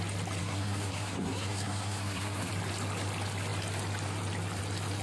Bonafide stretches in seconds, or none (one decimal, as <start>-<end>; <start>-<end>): 0.0-0.4; 2.5-5.0